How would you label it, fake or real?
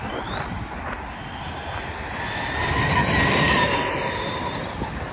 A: real